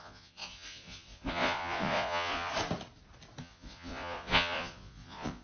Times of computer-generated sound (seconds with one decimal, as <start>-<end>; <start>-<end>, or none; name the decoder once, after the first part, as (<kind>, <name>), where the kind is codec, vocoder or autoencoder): 0.0-2.5 (vocoder, Vocos); 3.4-5.4